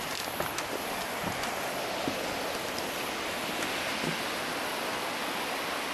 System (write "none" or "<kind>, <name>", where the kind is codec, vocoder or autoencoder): none